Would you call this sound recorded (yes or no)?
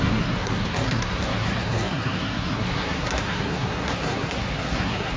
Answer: no